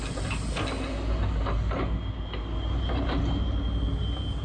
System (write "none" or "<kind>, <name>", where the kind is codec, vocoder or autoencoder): none